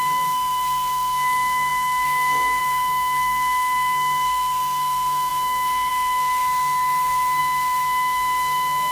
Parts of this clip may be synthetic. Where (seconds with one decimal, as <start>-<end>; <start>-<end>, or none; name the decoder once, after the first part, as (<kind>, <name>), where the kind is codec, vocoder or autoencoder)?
0.0-8.9 (codec, SNAC)

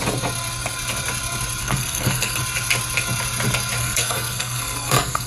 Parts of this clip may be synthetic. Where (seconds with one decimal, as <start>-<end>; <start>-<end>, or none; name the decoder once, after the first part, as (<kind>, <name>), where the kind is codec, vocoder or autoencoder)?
1.6-2.4 (codec, SNAC); 3.8-5.3

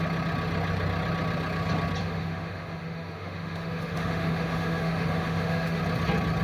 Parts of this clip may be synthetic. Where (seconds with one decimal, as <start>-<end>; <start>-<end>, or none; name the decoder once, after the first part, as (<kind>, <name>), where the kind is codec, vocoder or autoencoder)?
2.0-5.8 (autoencoder, DAC-VAE)

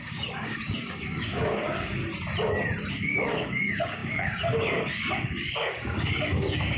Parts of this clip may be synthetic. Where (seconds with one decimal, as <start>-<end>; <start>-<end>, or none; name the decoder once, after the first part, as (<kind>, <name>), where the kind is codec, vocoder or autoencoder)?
0.0-2.0 (codec, DAC); 2.9-6.8

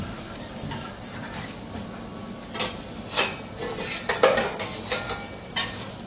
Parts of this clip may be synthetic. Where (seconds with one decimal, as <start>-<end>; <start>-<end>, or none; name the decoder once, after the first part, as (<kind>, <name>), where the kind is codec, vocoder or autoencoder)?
none